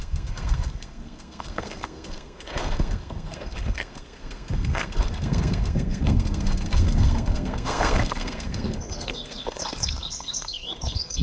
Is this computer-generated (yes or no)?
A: yes